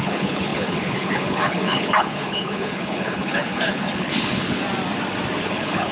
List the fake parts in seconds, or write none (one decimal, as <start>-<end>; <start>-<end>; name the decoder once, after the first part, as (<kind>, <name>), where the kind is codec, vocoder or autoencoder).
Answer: 0.0-4.6 (codec, HILCodec); 5.4-5.9